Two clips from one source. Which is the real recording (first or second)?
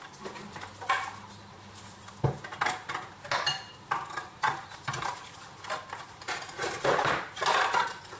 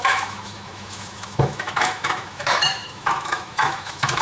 first